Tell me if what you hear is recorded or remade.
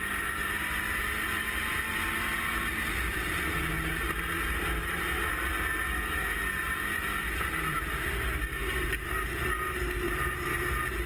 recorded